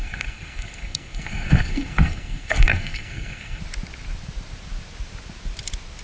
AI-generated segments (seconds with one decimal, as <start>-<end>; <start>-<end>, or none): 0.0-3.6